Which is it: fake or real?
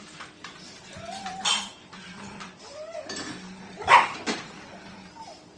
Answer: real